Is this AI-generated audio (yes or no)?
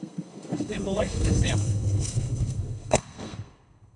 yes